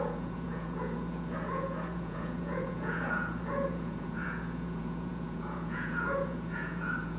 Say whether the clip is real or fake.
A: fake